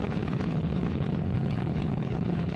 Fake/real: fake